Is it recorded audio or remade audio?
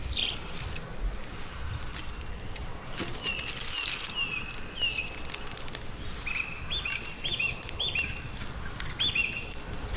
recorded